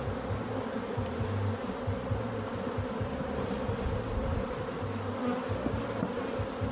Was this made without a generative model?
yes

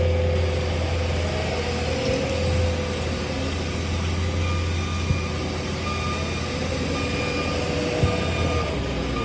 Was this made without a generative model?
yes